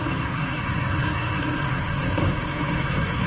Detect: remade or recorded remade